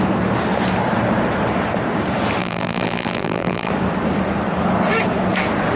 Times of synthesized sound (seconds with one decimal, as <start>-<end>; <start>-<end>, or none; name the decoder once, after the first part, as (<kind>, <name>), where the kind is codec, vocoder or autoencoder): 2.4-3.7 (vocoder, BigVGAN v2)